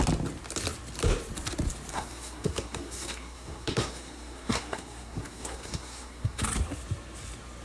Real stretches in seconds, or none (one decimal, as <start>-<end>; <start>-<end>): 0.0-1.9; 6.4-7.6